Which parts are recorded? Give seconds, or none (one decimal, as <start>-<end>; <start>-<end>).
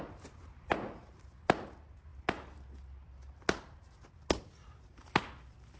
0.0-5.8